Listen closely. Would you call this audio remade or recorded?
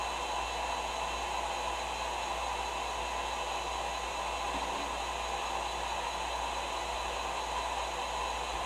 recorded